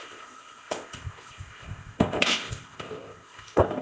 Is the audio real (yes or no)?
no